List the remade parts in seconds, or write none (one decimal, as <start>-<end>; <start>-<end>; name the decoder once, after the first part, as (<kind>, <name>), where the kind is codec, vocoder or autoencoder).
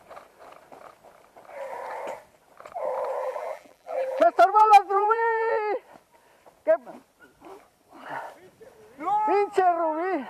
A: 3.2-5.5 (vocoder, BigVGAN v2)